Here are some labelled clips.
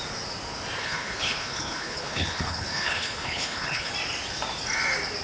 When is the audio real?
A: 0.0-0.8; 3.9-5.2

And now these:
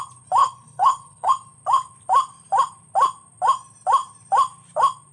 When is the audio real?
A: 0.0-0.4; 1.3-5.1

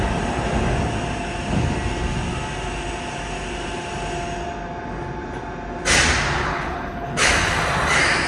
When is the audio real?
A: 0.0-6.4; 7.3-8.3

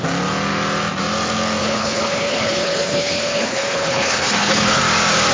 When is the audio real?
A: 0.0-1.6; 4.8-5.3

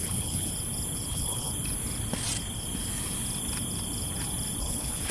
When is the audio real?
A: 0.5-1.1; 1.5-4.6